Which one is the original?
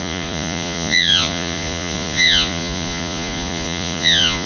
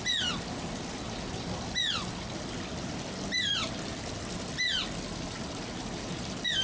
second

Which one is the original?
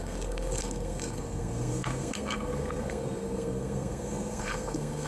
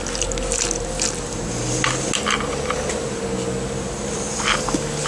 second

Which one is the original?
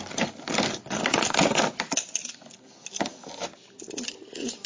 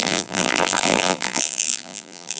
first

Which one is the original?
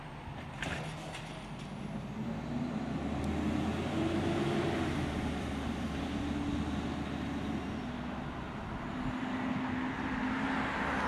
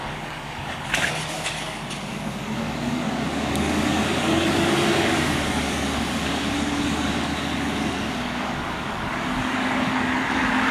first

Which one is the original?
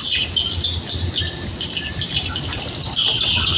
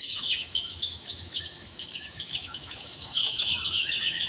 first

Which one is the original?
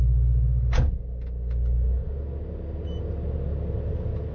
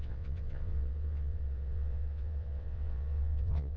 first